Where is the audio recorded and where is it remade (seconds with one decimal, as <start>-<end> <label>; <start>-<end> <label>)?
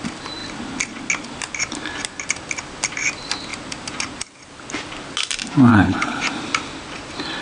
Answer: 0.0-5.7 recorded; 5.7-6.2 remade; 6.2-7.4 recorded